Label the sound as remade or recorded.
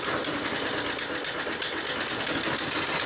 recorded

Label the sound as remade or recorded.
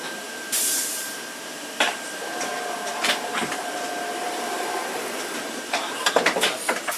remade